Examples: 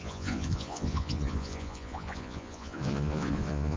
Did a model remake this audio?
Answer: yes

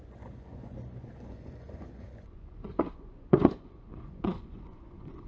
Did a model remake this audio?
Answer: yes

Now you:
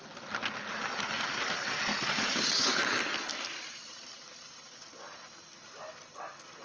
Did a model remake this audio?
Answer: no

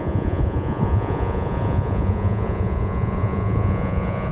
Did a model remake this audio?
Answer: yes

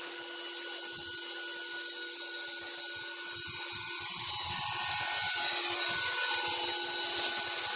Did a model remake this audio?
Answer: no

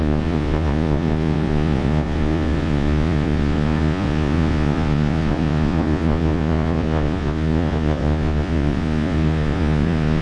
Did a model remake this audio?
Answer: yes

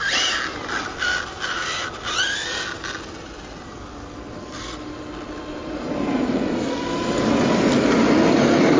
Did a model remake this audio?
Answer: no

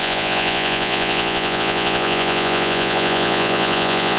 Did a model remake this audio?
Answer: yes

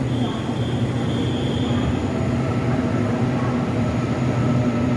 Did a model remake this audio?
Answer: no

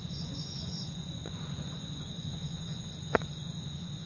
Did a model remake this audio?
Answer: yes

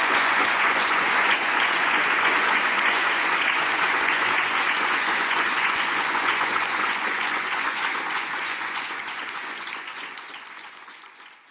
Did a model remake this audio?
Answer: yes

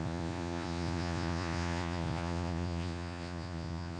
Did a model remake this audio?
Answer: yes